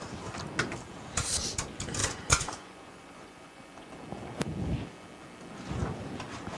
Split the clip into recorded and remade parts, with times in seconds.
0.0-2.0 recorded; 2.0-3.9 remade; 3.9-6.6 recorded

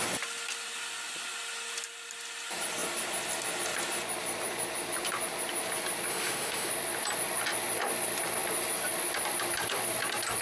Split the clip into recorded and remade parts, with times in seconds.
0.0-6.1 recorded; 6.1-6.7 remade; 6.7-10.4 recorded

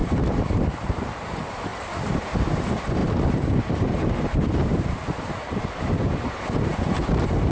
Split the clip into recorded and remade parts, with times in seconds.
0.0-1.7 remade; 1.7-2.2 recorded; 2.2-7.5 remade

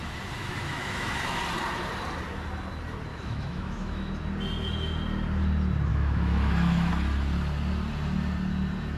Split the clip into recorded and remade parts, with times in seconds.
0.0-0.4 recorded; 0.4-1.4 remade; 1.4-3.1 recorded; 3.1-4.1 remade; 4.1-5.9 recorded; 5.9-6.9 remade; 6.9-9.0 recorded

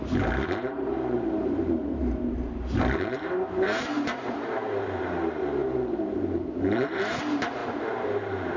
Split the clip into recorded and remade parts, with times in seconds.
0.0-8.6 remade

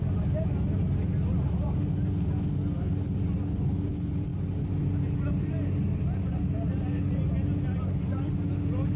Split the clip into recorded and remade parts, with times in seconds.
0.0-9.0 recorded